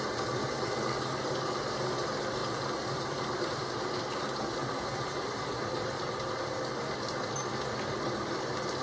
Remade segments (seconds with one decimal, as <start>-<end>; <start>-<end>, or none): 2.4-3.6; 4.6-6.7; 7.4-8.3